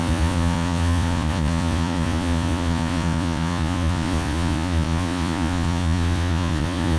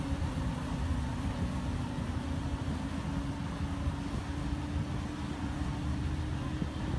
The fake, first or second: first